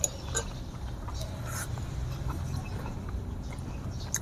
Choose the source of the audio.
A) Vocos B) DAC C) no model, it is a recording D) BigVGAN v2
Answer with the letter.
C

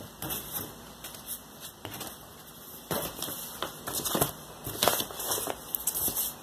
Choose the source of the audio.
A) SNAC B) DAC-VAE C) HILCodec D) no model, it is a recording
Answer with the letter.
D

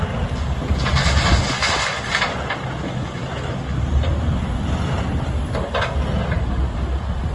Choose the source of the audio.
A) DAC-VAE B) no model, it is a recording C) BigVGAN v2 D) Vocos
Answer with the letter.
B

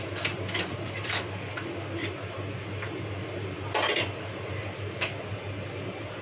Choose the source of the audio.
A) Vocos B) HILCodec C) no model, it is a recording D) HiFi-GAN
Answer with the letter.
C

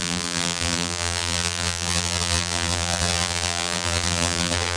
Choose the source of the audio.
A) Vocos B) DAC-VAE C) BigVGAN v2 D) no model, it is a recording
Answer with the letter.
C